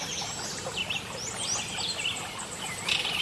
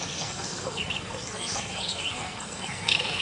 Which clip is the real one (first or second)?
first